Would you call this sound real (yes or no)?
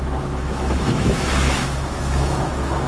no